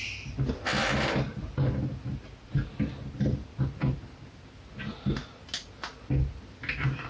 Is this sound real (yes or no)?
yes